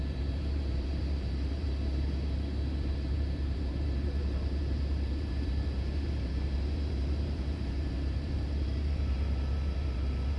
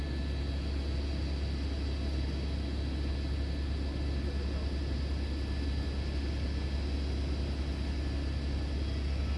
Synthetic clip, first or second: first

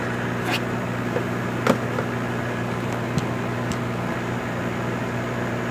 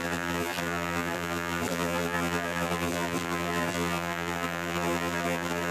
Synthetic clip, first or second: second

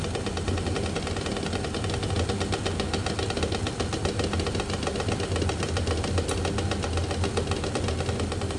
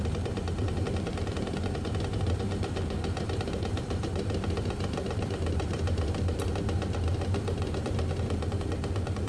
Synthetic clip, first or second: second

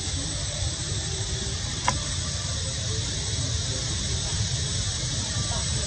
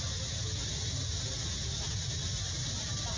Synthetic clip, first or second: first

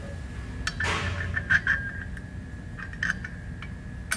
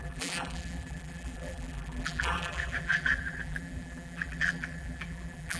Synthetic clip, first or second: second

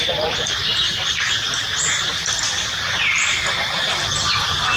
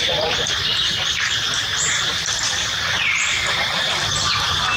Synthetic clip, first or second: second